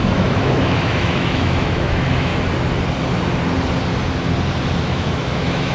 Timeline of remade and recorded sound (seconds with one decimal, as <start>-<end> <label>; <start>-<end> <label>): 0.0-2.3 remade; 2.3-4.8 recorded; 4.8-5.7 remade